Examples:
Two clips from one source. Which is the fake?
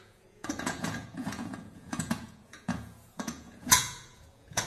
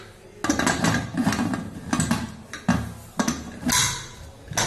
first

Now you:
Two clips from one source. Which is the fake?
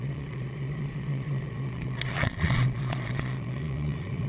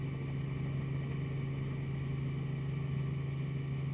first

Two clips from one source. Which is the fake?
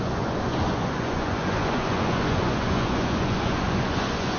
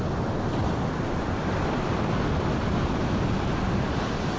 first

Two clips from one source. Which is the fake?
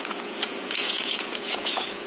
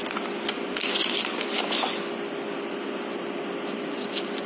first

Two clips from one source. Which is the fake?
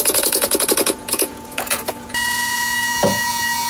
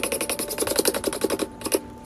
first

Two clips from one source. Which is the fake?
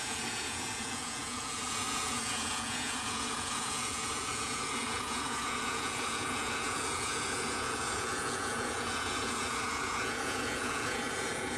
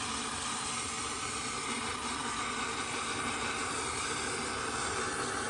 first